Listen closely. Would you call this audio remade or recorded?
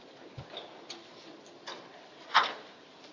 recorded